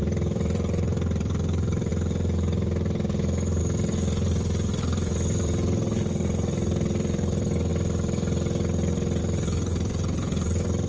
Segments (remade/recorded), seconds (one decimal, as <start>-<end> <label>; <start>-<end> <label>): 0.0-1.9 remade; 1.9-3.6 recorded; 3.6-7.7 remade; 7.7-9.2 recorded; 9.2-10.9 remade